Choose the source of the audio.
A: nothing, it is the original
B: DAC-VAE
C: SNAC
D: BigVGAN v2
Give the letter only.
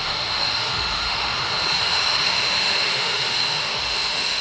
B